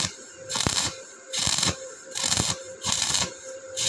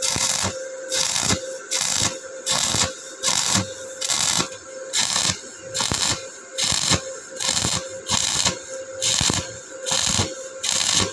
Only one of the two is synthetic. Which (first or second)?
first